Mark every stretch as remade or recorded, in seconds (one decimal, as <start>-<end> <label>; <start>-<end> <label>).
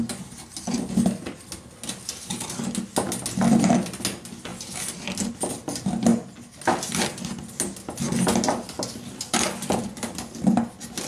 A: 0.0-11.1 recorded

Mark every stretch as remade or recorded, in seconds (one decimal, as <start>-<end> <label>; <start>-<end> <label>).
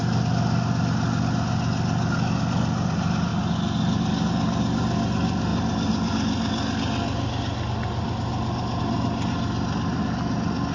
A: 0.0-10.7 recorded